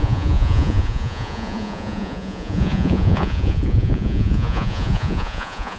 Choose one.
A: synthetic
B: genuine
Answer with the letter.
A